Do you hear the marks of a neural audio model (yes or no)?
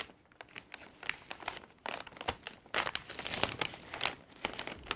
no